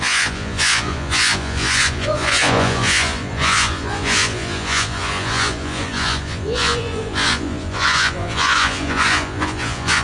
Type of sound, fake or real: fake